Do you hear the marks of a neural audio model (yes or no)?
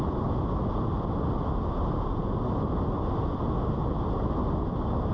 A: no